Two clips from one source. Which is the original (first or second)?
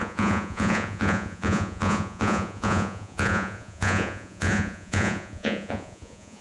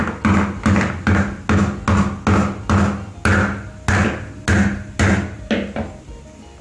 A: second